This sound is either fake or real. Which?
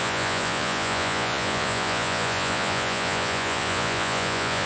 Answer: fake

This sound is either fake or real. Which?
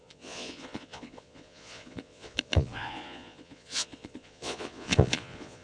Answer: fake